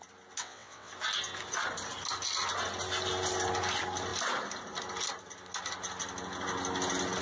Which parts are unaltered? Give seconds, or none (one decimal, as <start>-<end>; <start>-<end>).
0.0-0.4; 0.9-7.2